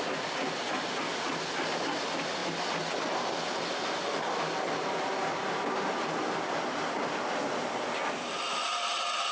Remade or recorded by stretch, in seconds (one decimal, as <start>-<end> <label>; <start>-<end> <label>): 0.0-9.3 recorded